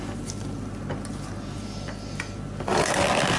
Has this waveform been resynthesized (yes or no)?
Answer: no